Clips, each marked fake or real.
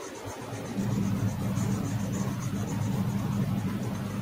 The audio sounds real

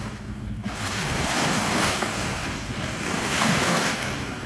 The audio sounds fake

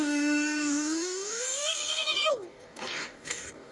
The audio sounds fake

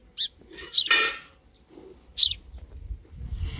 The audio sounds real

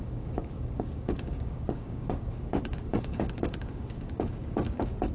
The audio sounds fake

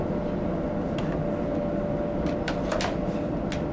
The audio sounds real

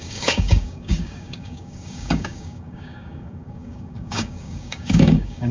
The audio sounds fake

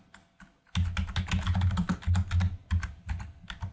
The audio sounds real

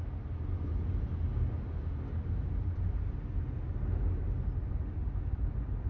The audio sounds real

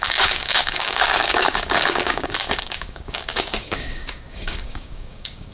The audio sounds fake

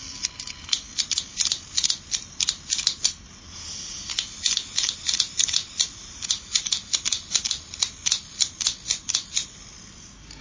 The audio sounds real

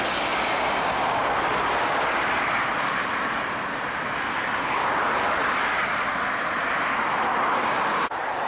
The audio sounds real